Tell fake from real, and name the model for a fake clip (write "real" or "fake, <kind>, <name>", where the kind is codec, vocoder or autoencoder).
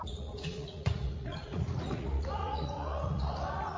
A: fake, vocoder, Vocos